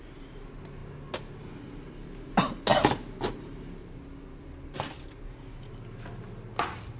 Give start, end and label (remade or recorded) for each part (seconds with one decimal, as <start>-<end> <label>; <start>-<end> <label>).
0.0-7.0 recorded